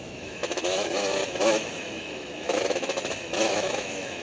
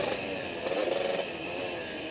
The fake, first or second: first